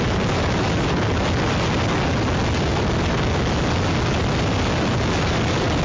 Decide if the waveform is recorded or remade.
recorded